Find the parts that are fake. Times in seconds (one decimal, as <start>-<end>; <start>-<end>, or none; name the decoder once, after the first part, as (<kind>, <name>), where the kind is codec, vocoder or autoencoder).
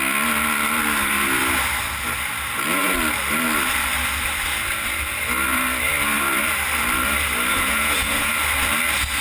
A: 7.5-8.3 (vocoder, Vocos)